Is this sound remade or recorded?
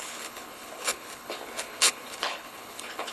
remade